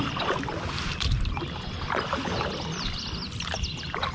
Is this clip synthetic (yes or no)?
yes